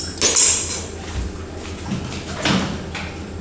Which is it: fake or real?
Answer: real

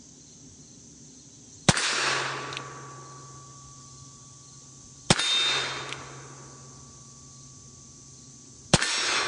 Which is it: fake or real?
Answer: real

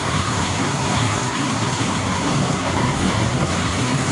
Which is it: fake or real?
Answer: fake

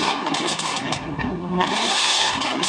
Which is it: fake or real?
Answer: fake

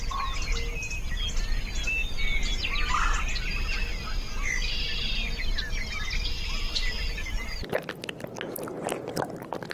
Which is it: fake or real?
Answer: real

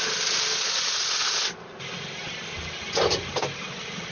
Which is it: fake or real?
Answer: real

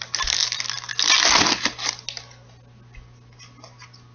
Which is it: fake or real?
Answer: real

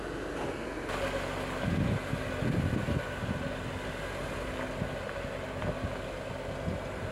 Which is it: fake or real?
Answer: real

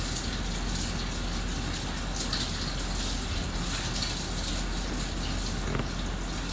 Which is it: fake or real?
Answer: real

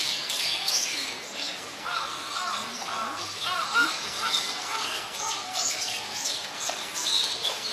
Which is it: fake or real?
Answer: fake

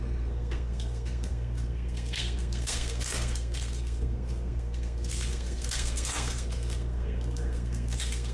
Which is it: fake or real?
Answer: fake